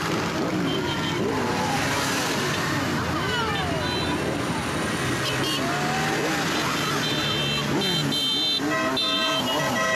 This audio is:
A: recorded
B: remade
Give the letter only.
A